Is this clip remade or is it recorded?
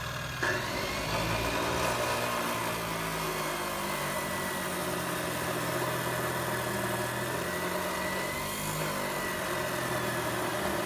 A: recorded